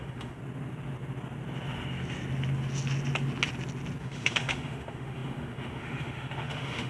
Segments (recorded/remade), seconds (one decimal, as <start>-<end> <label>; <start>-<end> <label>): 0.0-0.4 remade; 0.4-4.0 recorded; 4.0-6.9 remade